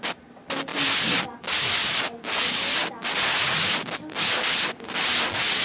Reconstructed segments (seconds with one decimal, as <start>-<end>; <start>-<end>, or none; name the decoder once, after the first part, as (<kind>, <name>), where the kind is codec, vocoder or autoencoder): none

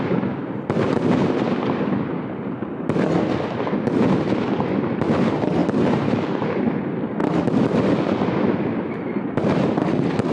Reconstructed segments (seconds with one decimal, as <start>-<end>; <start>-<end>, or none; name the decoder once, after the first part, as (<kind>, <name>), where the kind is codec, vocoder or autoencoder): none

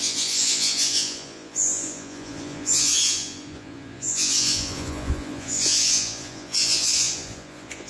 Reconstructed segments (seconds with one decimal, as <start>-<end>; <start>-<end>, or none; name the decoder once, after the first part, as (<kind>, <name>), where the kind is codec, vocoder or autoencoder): 0.0-7.9 (vocoder, Vocos)

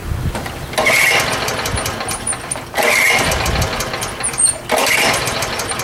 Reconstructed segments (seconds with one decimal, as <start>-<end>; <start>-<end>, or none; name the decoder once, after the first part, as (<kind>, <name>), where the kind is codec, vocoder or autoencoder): 0.0-0.7 (vocoder, BigVGAN v2)

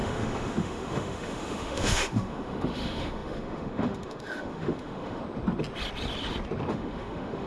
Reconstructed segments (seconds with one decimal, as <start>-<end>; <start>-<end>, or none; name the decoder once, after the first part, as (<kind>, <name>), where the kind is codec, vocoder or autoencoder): 0.0-5.2 (autoencoder, DAC-VAE); 6.7-7.5

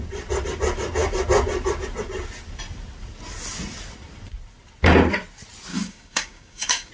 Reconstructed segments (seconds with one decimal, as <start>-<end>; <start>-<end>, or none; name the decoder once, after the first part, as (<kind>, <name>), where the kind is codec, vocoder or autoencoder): 5.7-6.9 (codec, DAC)